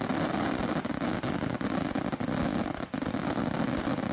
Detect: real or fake real